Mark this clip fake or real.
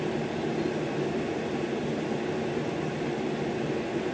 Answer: real